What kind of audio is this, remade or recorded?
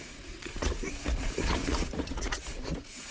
remade